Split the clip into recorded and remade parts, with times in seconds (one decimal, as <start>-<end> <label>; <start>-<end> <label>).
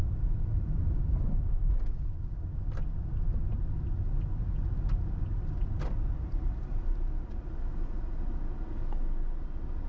0.0-9.9 recorded